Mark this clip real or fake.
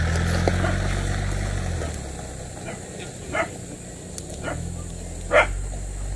real